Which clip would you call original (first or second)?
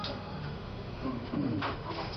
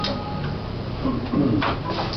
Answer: second